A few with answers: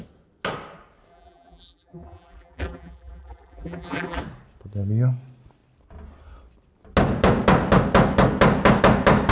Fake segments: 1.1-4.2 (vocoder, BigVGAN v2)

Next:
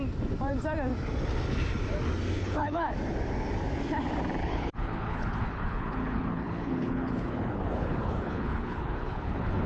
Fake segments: 2.4-2.9 (codec, HILCodec); 4.4-9.7

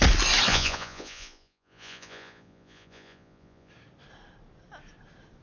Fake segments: 0.5-3.7 (vocoder, Vocos)

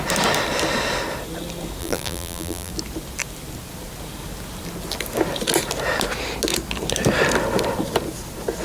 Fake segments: 1.8-2.7 (vocoder, BigVGAN v2)